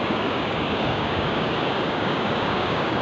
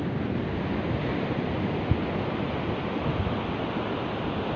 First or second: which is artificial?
first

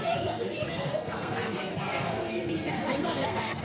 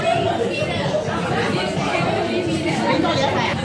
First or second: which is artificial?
first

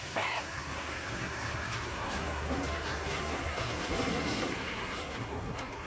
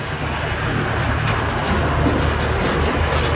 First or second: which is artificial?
first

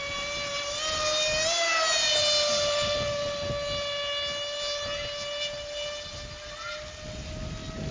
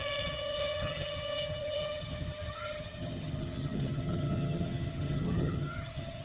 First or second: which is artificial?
second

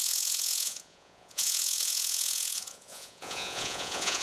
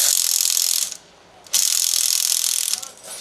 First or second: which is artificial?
first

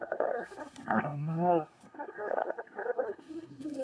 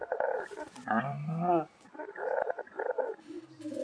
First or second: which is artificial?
first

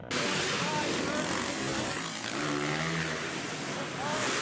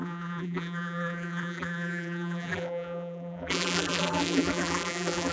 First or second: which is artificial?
second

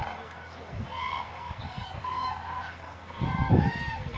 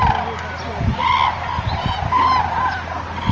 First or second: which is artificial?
first